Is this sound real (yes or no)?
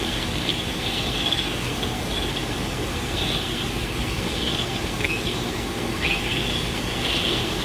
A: no